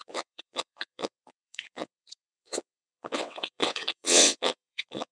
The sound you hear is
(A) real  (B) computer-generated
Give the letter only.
B